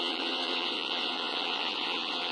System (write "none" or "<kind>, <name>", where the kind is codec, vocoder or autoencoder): vocoder, Vocos